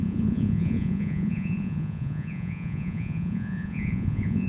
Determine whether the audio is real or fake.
fake